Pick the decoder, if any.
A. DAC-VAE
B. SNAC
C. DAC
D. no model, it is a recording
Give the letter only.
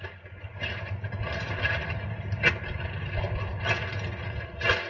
D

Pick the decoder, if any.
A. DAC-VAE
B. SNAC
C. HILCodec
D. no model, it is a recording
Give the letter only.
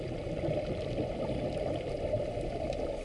D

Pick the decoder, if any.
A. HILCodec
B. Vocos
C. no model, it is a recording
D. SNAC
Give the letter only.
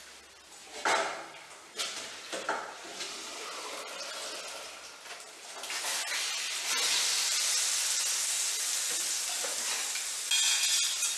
C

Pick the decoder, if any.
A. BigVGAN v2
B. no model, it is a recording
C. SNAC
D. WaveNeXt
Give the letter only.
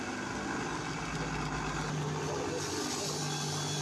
B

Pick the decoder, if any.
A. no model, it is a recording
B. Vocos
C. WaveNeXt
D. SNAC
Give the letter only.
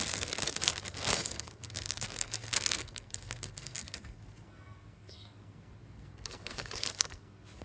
D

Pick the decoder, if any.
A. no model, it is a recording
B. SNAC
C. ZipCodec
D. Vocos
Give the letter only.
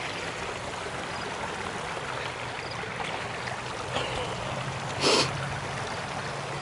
A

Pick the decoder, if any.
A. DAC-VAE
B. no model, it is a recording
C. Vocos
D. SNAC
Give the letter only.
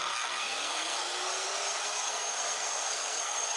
D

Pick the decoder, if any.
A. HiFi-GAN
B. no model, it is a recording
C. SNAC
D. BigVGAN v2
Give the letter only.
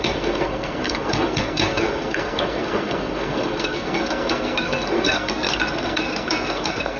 C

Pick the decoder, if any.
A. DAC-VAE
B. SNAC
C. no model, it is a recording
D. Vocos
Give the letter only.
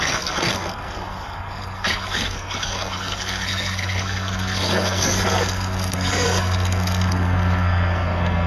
B